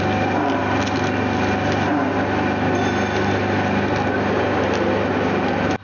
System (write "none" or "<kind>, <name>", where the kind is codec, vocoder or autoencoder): none